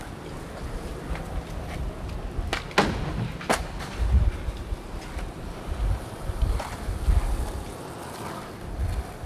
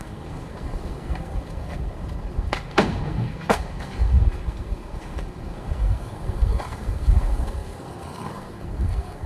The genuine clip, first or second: first